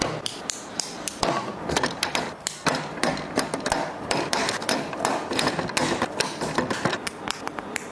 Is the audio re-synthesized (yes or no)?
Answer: yes